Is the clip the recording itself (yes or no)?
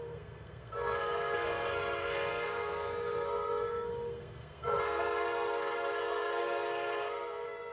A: no